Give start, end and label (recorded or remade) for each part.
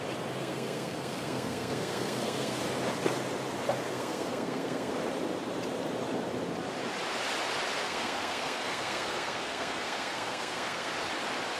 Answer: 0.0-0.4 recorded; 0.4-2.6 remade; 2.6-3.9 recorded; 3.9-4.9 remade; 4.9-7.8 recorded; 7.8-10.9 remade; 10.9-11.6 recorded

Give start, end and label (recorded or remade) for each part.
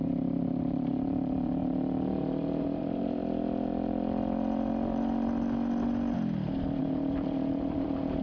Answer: 0.0-1.6 remade; 1.6-2.2 recorded; 2.2-3.2 remade; 3.2-6.8 recorded; 6.8-8.2 remade